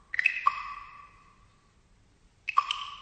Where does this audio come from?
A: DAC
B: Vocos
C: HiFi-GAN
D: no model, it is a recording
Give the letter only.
D